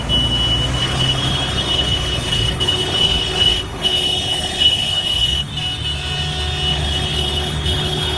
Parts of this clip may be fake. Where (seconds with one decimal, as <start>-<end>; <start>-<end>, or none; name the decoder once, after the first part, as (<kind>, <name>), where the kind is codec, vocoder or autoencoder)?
0.8-5.5 (codec, HILCodec); 6.7-8.2